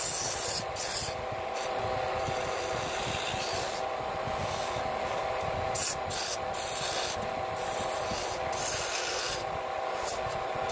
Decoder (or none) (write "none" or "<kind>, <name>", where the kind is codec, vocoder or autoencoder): none